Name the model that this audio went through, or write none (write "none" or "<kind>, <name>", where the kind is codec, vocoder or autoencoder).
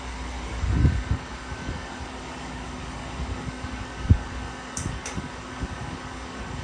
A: codec, DAC